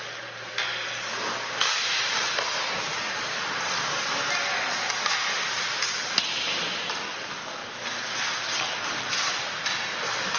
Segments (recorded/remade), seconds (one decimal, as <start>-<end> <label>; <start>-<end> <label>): 0.0-10.4 recorded